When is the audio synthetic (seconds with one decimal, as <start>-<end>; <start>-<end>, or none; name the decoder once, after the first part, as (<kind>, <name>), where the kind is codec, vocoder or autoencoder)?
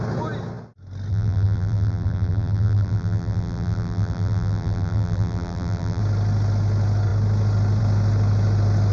1.1-6.0 (vocoder, BigVGAN v2)